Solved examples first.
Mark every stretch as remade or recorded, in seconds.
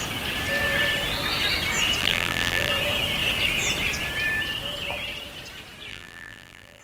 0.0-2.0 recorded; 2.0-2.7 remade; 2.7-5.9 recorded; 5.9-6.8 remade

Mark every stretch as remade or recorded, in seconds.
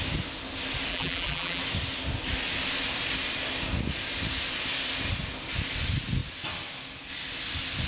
0.0-0.9 recorded; 0.9-1.6 remade; 1.6-7.9 recorded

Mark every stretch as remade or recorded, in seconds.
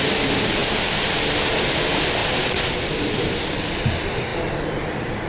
0.0-2.2 recorded; 2.2-3.0 remade; 3.0-4.3 recorded; 4.3-5.3 remade